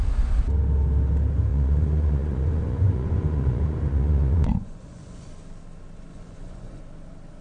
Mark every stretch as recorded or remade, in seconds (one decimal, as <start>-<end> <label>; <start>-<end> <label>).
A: 0.0-1.5 recorded; 1.5-5.3 remade; 5.3-6.1 recorded; 6.1-6.8 remade; 6.8-7.4 recorded